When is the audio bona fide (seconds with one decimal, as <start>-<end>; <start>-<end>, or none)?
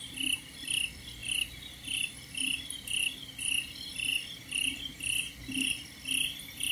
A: 4.1-5.0